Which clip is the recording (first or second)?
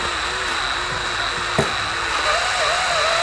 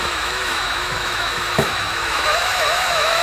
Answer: first